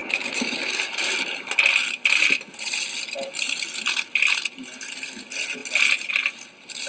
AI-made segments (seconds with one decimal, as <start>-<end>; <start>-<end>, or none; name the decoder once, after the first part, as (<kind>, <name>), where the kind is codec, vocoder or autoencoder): 0.0-1.1 (codec, DAC)